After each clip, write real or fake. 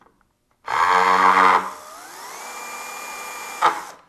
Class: real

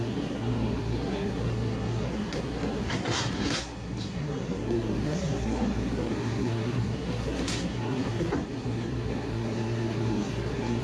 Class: fake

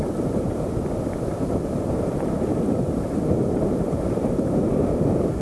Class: fake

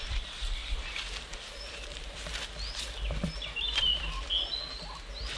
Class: real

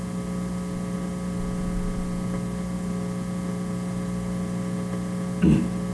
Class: real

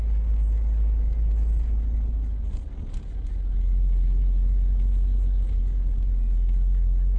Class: real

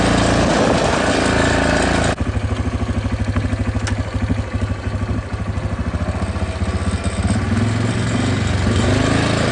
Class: real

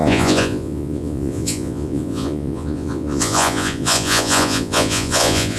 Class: fake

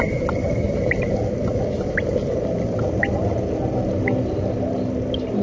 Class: real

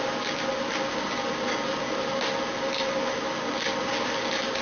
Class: real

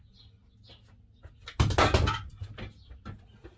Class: real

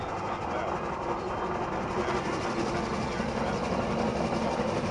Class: real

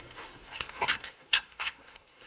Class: fake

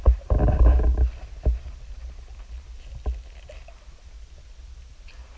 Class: real